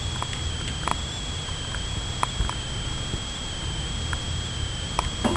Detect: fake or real real